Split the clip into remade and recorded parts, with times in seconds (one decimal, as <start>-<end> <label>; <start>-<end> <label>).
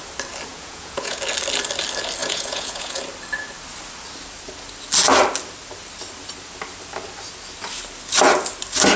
0.0-0.5 recorded; 0.5-1.2 remade; 1.2-2.2 recorded; 2.2-3.0 remade; 3.0-9.0 recorded